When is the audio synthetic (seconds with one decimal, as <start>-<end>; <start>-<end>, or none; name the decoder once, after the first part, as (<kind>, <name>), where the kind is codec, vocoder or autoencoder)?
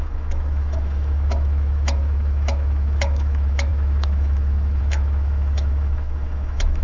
0.0-6.8 (autoencoder, DAC-VAE)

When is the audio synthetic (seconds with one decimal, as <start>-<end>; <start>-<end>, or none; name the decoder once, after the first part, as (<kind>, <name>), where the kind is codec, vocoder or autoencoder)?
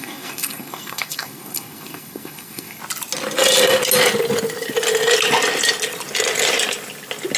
0.0-2.8 (codec, SNAC)